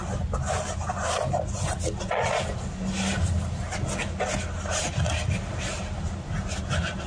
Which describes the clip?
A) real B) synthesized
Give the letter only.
A